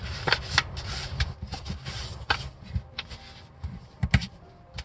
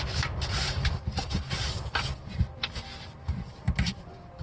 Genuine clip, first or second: second